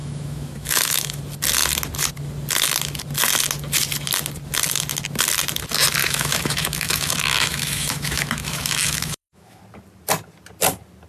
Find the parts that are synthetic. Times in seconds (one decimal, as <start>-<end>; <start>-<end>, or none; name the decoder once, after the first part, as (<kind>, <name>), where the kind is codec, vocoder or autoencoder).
0.0-1.2 (autoencoder, DAC-VAE); 6.0-9.6